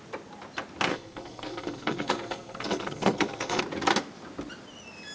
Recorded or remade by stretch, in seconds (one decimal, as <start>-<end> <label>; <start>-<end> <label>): 0.0-0.9 recorded; 0.9-3.6 remade; 3.6-5.1 recorded